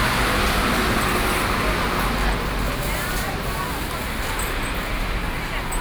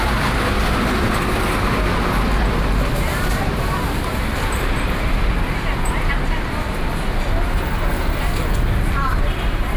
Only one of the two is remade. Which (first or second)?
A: second